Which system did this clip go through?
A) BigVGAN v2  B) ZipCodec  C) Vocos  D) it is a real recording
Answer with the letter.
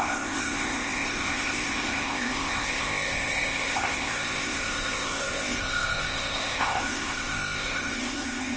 B